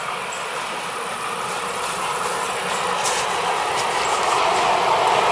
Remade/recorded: recorded